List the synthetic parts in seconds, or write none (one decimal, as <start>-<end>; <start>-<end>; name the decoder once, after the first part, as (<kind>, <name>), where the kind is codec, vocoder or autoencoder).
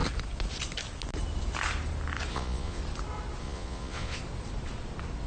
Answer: 2.3-2.8 (vocoder, Vocos); 3.4-4.2